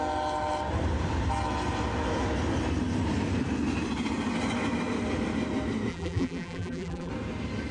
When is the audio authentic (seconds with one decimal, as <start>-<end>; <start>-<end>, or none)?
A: 0.0-5.9; 7.1-7.7